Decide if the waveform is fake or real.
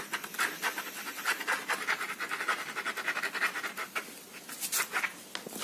real